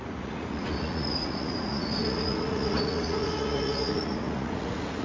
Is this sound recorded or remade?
remade